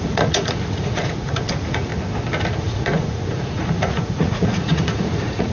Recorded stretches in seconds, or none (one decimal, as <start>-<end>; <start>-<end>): 1.9-2.6